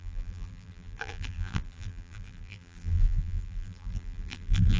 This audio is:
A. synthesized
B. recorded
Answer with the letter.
A